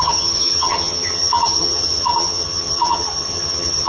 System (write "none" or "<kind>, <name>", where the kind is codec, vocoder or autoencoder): vocoder, HiFi-GAN